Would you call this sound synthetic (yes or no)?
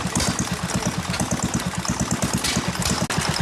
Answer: no